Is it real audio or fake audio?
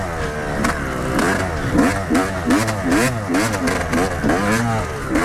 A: real